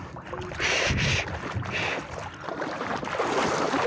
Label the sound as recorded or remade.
recorded